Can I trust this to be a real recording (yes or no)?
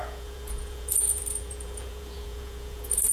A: no